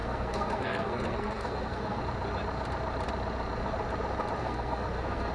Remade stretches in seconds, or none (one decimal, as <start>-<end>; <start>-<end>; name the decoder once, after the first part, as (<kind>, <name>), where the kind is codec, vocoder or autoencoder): 0.0-2.0 (codec, SNAC); 4.4-5.3